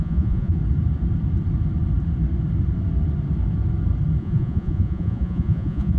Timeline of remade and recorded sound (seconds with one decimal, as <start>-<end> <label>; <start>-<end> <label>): 0.0-0.6 remade; 0.6-4.2 recorded; 4.2-6.0 remade